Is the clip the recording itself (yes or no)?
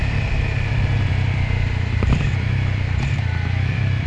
no